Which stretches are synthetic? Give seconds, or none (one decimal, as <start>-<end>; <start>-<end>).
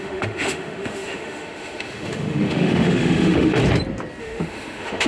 0.0-3.6; 4.2-5.1